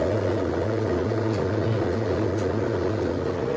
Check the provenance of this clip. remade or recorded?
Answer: remade